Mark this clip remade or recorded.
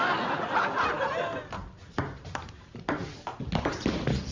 recorded